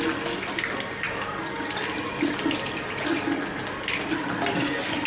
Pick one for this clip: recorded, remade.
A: recorded